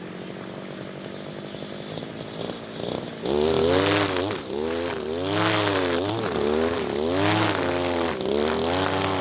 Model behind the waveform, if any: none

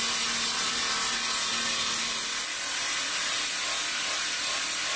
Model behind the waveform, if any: none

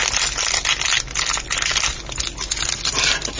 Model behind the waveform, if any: none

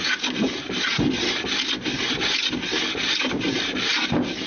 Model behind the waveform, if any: none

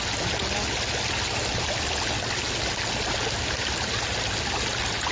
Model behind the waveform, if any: none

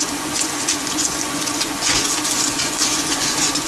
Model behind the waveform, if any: vocoder, Vocos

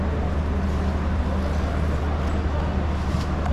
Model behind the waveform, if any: none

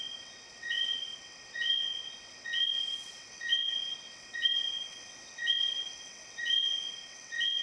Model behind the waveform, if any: vocoder, WaveNeXt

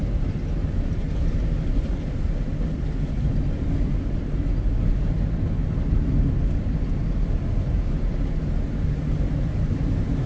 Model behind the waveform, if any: none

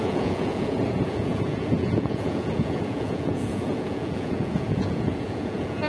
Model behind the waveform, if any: vocoder, Vocos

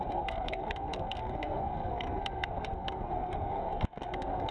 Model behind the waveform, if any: codec, SNAC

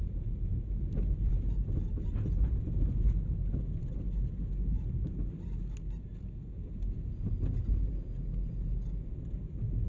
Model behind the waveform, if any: none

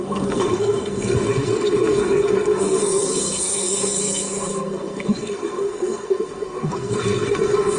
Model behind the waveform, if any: codec, SNAC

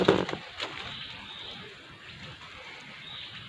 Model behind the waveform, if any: none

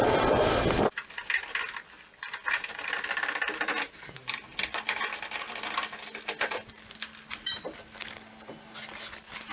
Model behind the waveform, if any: none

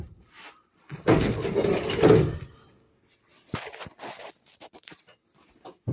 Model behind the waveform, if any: none